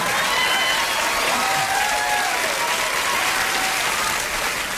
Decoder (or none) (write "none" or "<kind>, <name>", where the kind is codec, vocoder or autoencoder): none